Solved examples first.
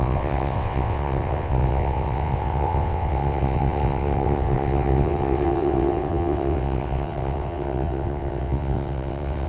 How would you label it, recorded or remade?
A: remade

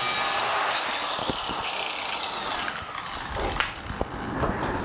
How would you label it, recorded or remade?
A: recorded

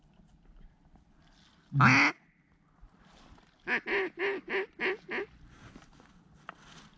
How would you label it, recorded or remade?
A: recorded